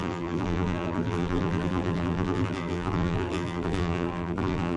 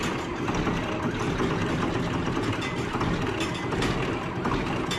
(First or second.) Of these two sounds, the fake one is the first